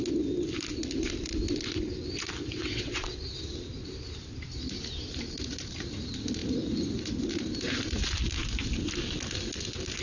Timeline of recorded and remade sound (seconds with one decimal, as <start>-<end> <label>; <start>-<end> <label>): 0.0-2.5 recorded; 2.5-3.2 remade; 3.2-10.0 recorded